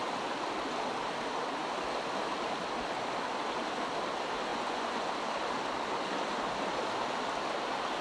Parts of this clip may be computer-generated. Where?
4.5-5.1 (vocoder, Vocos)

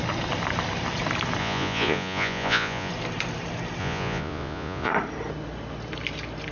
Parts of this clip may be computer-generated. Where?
1.4-2.9 (vocoder, Vocos); 3.8-4.9

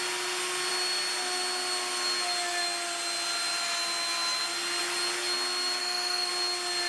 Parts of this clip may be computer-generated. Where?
5.8-6.3 (autoencoder, DAC-VAE)

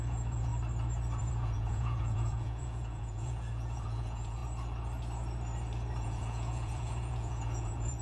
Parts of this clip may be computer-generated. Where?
0.0-0.5 (vocoder, Vocos); 1.2-4.4; 6.0-8.0

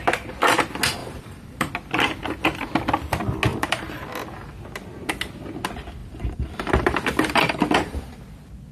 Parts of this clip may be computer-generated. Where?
1.0-1.7 (vocoder, BigVGAN v2); 3.5-4.0; 6.0-8.2

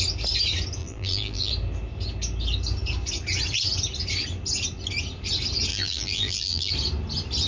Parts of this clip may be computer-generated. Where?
0.8-1.5 (vocoder, BigVGAN v2); 5.7-6.7

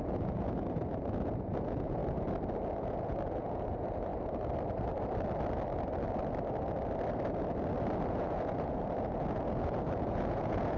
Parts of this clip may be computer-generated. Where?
0.0-2.0 (vocoder, Vocos); 2.8-4.1; 8.1-10.8